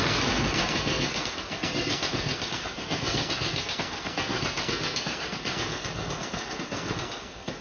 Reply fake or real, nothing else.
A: fake